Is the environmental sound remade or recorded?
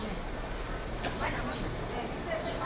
recorded